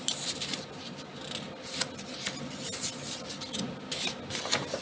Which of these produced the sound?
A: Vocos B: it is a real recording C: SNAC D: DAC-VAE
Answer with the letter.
B